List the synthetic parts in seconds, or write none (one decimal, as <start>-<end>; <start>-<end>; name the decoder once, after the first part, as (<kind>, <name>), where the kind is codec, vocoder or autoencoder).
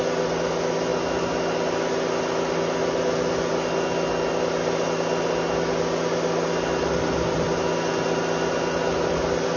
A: none